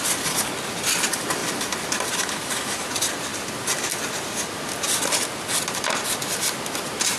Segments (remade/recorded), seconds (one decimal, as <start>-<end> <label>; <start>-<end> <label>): 0.0-7.2 remade